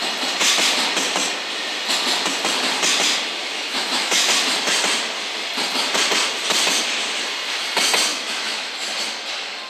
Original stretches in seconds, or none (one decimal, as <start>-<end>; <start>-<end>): 0.0-3.4; 4.3-8.1; 8.7-9.7